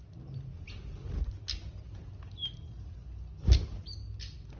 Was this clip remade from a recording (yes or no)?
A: no